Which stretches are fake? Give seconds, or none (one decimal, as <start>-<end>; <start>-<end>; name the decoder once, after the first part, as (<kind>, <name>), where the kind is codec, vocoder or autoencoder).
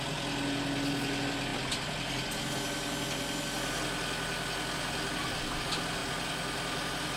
none